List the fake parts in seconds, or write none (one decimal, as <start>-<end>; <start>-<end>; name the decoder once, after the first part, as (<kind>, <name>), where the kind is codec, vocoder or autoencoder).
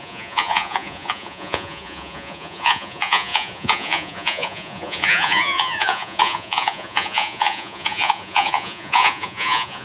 0.0-9.8 (vocoder, Vocos)